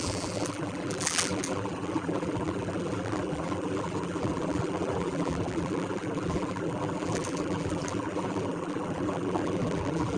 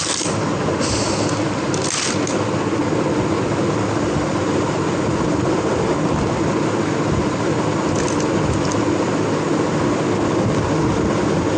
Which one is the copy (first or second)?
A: first